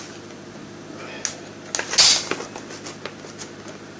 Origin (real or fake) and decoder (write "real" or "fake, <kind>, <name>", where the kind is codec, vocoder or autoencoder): real